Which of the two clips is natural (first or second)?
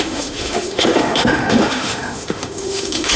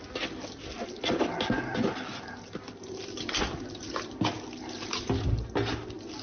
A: second